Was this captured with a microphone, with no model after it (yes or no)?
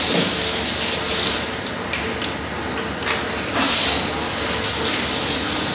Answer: yes